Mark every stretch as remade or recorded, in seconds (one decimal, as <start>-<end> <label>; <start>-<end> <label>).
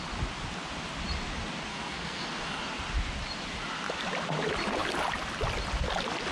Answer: 0.0-1.7 recorded; 1.7-2.6 remade; 2.6-6.3 recorded